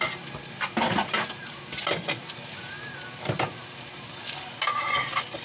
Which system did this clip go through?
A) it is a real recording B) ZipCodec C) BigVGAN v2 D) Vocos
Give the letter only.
A